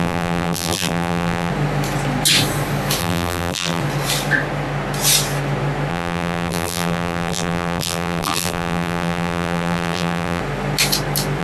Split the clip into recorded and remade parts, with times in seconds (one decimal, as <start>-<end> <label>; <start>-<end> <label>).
0.0-1.5 remade; 1.5-3.0 recorded; 3.0-3.8 remade; 3.8-5.9 recorded; 5.9-10.4 remade; 10.4-11.4 recorded